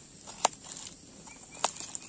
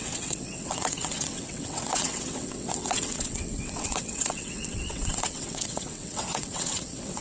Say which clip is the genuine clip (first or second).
first